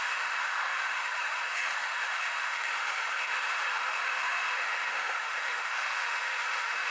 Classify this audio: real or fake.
fake